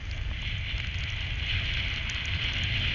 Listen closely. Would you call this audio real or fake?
real